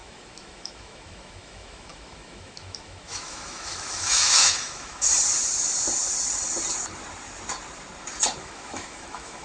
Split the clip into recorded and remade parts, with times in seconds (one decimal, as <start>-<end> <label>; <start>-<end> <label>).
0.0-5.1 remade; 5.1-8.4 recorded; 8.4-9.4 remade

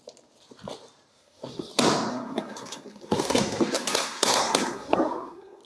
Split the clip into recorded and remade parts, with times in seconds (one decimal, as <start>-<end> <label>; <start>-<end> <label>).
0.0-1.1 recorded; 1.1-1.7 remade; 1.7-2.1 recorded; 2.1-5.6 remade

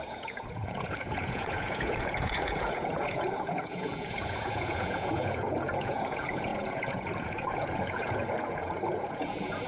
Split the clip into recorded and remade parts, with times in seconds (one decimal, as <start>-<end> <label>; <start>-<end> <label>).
0.0-9.7 remade

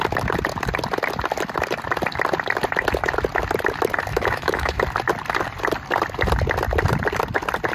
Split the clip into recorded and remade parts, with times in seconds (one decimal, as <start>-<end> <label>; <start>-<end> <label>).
0.0-4.1 recorded; 4.1-4.8 remade; 4.8-7.7 recorded